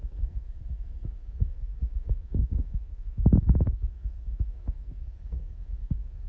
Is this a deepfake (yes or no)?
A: yes